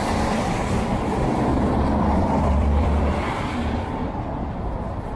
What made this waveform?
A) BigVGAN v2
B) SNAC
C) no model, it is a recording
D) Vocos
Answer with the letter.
A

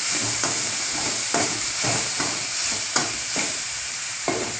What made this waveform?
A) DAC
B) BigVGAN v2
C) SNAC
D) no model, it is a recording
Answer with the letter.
B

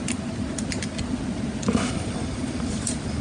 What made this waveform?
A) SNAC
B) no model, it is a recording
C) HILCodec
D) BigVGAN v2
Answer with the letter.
B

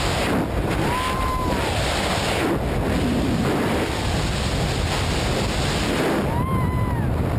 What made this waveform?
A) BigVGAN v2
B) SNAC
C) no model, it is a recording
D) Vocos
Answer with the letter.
C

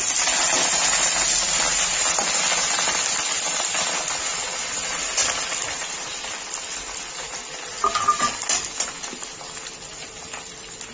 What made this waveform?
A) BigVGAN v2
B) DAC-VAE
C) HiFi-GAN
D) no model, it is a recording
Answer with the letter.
D